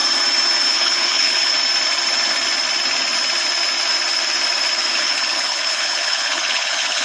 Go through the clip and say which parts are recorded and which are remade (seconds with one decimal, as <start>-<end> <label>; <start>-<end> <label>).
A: 0.0-0.7 recorded; 0.7-1.5 remade; 1.5-4.9 recorded; 4.9-7.0 remade